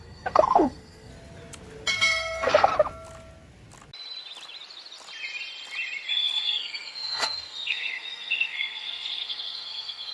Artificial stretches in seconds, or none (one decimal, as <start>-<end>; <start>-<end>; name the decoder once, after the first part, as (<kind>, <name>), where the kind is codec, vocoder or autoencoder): 0.0-1.1 (codec, SNAC); 1.9-2.7; 6.1-10.1

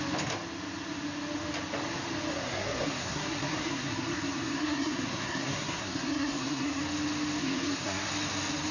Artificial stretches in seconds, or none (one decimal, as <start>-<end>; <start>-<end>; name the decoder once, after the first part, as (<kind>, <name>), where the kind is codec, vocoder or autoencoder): 2.3-6.8 (codec, SNAC); 7.4-8.1

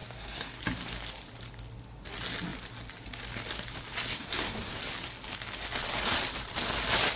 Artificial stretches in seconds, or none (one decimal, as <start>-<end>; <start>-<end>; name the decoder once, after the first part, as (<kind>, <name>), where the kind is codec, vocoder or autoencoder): 0.0-0.6 (codec, SNAC); 4.1-4.8